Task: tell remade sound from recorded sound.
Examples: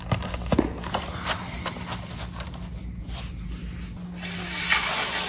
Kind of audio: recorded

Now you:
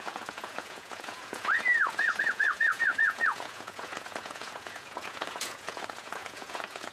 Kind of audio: remade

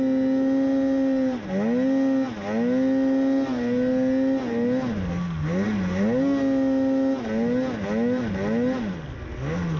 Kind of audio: recorded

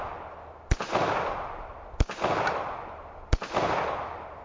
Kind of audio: recorded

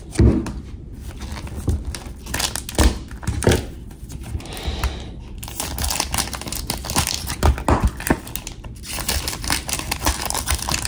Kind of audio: recorded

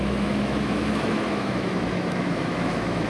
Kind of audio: remade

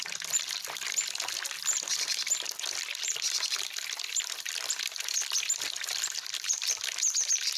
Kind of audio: remade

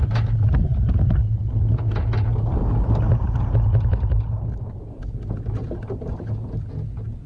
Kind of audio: recorded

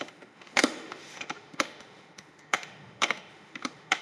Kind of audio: remade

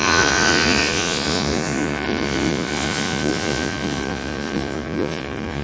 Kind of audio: remade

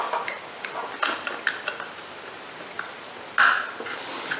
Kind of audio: recorded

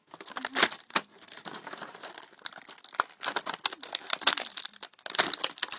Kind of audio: recorded